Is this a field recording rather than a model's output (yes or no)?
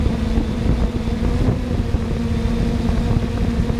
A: yes